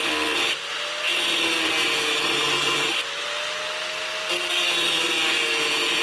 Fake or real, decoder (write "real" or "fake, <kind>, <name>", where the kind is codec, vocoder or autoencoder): real